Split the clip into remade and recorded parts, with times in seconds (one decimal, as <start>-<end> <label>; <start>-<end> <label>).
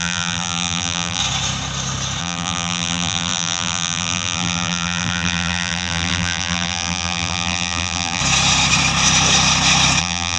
0.0-1.2 remade; 1.2-2.2 recorded; 2.2-8.2 remade; 8.2-10.0 recorded; 10.0-10.4 remade